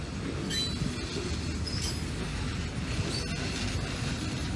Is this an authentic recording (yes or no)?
yes